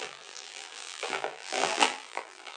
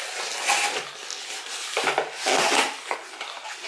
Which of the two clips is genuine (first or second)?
second